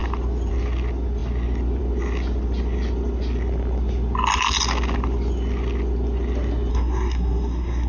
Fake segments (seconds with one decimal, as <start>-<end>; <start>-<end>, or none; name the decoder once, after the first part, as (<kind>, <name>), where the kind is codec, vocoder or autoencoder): 6.7-7.9 (codec, SNAC)